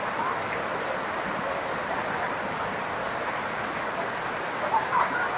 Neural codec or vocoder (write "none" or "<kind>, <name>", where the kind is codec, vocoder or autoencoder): none